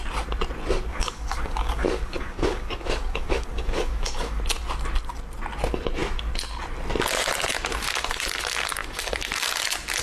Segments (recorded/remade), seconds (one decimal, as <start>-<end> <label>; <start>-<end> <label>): 0.0-0.9 recorded; 0.9-4.4 remade; 4.4-10.0 recorded